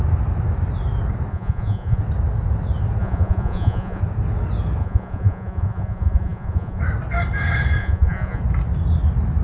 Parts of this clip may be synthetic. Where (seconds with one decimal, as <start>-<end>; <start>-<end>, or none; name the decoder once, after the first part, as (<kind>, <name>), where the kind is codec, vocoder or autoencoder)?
1.3-2.0 (vocoder, Vocos); 3.0-4.0; 4.8-6.8; 7.8-8.4